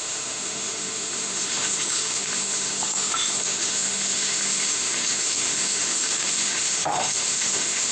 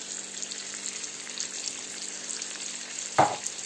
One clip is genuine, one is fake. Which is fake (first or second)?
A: first